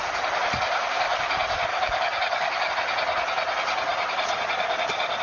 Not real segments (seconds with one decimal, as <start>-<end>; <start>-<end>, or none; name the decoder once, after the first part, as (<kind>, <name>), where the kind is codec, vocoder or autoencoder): 1.7-2.7 (codec, DAC)